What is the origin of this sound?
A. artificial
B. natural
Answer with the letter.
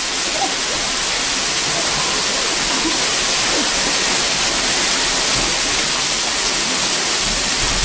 B